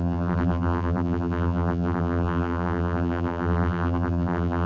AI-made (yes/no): yes